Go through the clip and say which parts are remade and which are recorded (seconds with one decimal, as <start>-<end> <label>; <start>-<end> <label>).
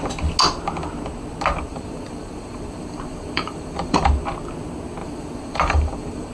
0.0-1.7 recorded; 1.7-4.1 remade; 4.1-5.0 recorded; 5.0-6.3 remade